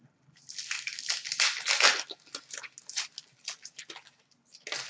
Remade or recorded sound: recorded